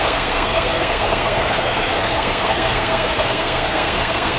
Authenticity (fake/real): fake